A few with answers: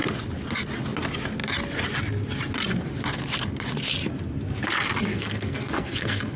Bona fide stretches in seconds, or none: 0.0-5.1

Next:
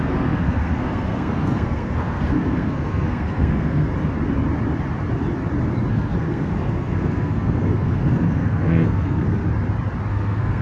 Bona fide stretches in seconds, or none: 3.9-5.9; 9.4-10.1

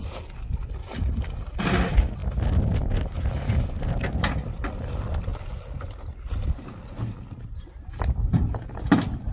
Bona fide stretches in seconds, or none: 5.3-7.5

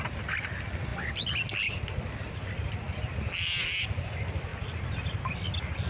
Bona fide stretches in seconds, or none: 0.0-5.9

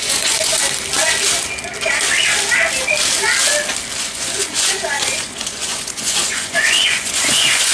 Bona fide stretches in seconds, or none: 0.5-4.0

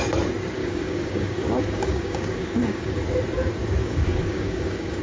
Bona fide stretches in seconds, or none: 0.0-0.6; 3.0-3.8

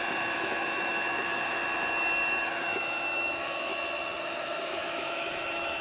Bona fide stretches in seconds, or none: 1.6-2.5; 3.7-4.2